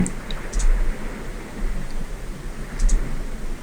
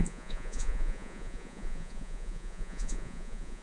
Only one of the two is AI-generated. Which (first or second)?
second